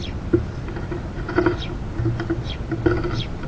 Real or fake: real